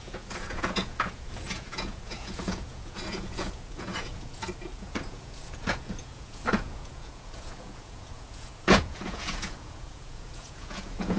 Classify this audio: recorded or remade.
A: remade